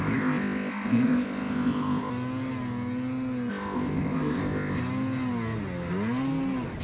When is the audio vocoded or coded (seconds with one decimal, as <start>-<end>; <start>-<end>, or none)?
0.0-2.1; 3.5-4.8